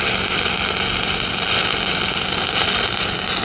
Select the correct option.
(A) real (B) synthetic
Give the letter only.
A